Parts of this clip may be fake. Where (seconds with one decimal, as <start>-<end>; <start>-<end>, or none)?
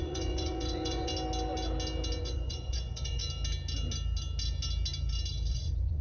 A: 0.0-1.1; 2.2-3.2; 5.5-6.0